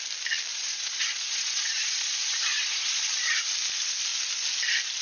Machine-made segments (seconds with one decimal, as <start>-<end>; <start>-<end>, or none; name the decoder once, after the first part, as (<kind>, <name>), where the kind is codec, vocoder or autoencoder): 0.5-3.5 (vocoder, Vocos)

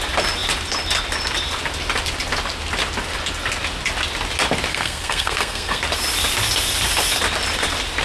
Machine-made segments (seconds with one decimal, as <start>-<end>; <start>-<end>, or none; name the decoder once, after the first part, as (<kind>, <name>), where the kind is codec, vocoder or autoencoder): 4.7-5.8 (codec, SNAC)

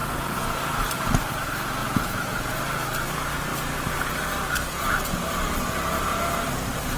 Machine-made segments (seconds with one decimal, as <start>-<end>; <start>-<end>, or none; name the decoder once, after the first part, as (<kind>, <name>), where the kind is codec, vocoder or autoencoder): 0.0-0.6 (vocoder, Vocos); 1.8-2.5

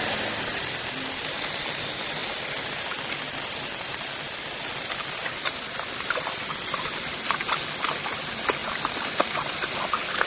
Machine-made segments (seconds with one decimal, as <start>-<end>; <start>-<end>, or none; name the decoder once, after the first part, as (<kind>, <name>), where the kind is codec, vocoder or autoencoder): none

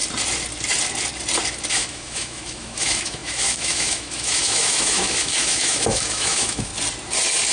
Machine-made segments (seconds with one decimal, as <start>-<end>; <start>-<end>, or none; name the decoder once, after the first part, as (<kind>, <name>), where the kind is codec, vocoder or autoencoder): 1.7-6.7 (autoencoder, DAC-VAE)

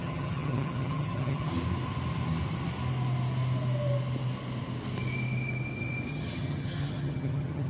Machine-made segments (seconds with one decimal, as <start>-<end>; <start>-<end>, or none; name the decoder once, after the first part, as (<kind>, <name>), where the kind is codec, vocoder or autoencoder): 0.0-1.5 (vocoder, HiFi-GAN); 6.1-7.7

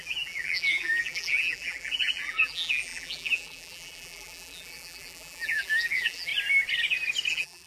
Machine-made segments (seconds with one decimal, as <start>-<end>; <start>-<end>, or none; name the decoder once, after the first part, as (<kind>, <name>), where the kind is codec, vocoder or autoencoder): 0.0-6.3 (vocoder, BigVGAN v2); 7.3-7.7

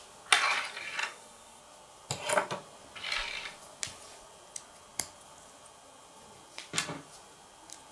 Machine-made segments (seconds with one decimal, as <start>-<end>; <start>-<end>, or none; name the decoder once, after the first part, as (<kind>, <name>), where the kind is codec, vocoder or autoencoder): 1.0-1.6 (codec, DAC)